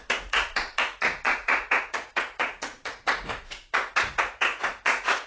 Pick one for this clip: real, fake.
fake